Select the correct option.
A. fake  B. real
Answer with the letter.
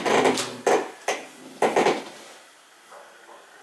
B